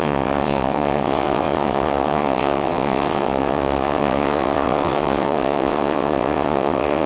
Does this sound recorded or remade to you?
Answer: remade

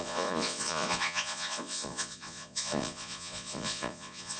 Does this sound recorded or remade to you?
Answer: remade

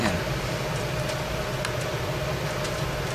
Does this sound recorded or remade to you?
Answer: recorded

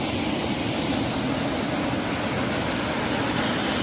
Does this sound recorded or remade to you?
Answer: recorded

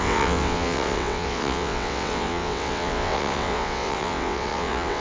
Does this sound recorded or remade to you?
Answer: remade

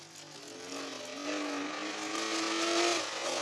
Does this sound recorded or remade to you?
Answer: recorded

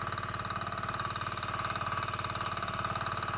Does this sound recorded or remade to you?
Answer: recorded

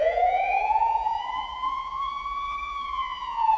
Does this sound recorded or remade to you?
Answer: remade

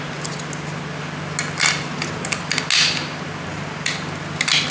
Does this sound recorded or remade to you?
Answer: recorded